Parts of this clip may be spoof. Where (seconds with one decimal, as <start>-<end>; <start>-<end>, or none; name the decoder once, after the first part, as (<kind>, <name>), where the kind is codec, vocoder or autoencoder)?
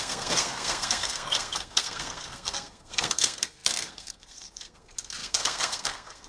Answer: 0.0-6.3 (codec, SNAC)